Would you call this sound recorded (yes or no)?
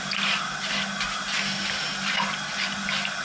yes